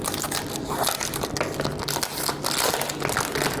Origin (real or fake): real